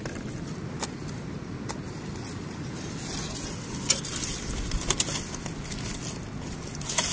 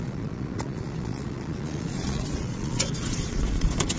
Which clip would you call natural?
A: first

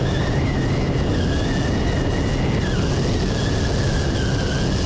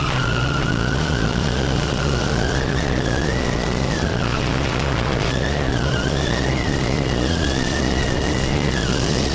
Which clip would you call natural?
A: first